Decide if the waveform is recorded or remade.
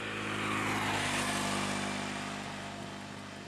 recorded